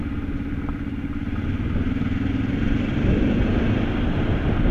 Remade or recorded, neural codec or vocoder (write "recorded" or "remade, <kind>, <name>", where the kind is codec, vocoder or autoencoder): recorded